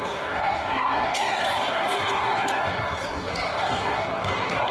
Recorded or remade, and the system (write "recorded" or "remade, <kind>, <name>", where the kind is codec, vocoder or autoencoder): remade, codec, SNAC